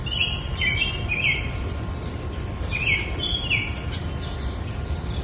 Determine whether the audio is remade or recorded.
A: recorded